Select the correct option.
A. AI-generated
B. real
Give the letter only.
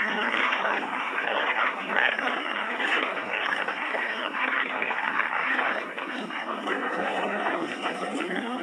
A